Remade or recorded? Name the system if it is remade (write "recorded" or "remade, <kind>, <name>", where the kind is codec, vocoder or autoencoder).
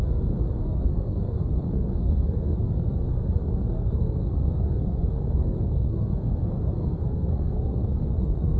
remade, codec, SNAC